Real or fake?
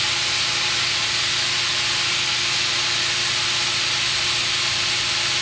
real